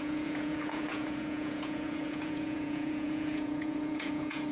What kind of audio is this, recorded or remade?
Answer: remade